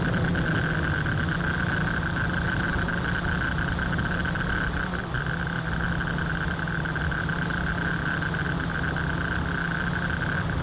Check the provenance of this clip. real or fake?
real